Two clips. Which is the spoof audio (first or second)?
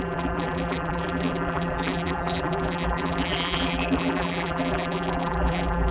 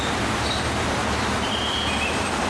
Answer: first